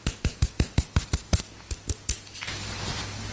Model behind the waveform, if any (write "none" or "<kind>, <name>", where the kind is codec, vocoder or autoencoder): vocoder, BigVGAN v2